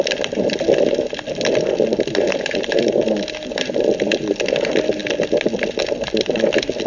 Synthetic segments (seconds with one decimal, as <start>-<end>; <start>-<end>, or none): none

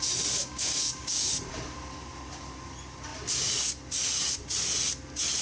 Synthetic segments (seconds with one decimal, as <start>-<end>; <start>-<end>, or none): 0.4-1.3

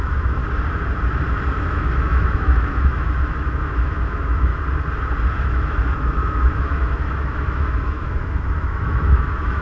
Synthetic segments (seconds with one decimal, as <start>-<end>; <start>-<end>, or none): 0.0-0.4; 1.5-4.5; 5.4-9.6

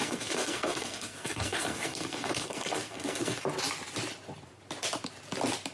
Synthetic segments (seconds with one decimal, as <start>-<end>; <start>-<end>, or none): 0.0-3.4